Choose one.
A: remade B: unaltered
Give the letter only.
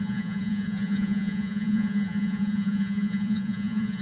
A